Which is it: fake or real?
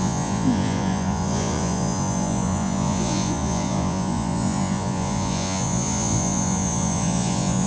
fake